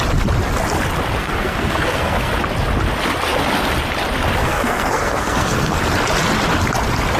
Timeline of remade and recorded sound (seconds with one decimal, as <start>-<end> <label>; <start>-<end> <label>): 0.0-1.2 recorded; 1.2-2.3 remade; 2.3-4.4 recorded; 4.4-5.8 remade; 5.8-7.2 recorded